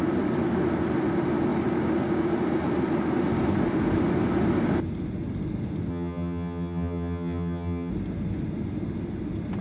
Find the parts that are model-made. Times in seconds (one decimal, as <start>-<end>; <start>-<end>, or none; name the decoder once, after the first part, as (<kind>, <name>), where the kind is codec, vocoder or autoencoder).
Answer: 5.9-7.9 (vocoder, HiFi-GAN)